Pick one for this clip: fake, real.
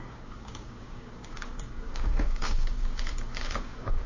fake